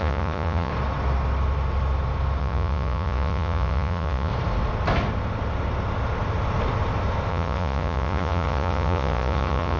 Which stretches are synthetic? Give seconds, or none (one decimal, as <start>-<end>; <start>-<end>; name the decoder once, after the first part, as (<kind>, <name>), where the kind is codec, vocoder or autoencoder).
0.0-0.7 (vocoder, Vocos); 2.4-4.3; 7.3-9.8